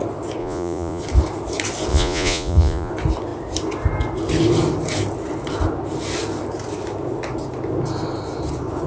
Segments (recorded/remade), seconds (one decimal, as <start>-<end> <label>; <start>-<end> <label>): 0.0-0.4 recorded; 0.4-1.0 remade; 1.0-1.9 recorded; 1.9-2.9 remade; 2.9-8.9 recorded